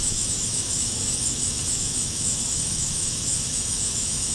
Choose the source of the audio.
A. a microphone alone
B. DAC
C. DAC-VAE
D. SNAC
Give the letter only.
C